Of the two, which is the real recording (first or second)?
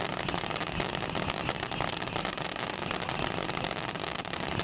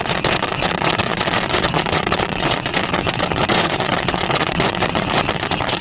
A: first